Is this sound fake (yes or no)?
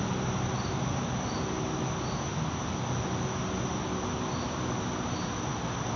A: no